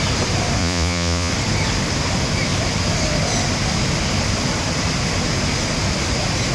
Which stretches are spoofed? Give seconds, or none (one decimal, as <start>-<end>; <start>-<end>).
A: 0.6-1.3